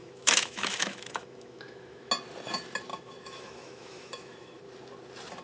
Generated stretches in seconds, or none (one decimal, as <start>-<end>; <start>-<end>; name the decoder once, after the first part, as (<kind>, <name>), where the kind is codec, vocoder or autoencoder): 0.0-2.1 (autoencoder, DAC-VAE); 2.9-4.6